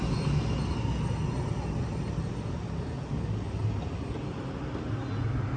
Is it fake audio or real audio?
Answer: real